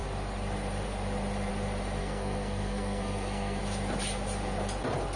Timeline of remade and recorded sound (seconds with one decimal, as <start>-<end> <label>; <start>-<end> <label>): 0.0-2.0 recorded; 2.0-3.6 remade; 3.6-5.2 recorded